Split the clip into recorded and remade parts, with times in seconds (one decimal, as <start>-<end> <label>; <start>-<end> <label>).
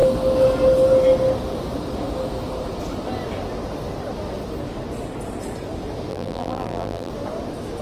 0.0-6.1 recorded; 6.1-7.1 remade; 7.1-7.8 recorded